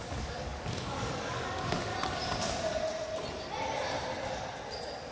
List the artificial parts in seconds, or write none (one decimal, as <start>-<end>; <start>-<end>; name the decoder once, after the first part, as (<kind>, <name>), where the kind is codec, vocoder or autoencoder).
0.0-1.9 (codec, DAC)